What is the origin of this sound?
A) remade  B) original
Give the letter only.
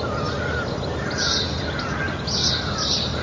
B